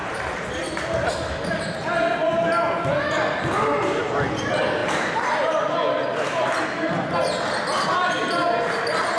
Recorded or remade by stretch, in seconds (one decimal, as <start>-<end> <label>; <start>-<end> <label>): 0.0-9.2 recorded